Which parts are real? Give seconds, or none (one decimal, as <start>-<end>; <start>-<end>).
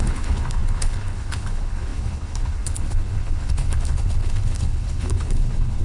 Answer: none